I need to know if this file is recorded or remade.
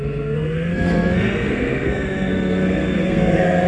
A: remade